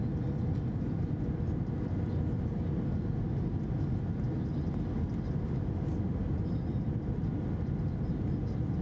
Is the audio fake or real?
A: real